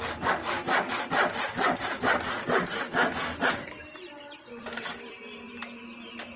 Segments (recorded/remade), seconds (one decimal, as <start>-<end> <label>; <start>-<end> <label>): 0.0-3.3 recorded; 3.3-5.5 remade; 5.5-6.4 recorded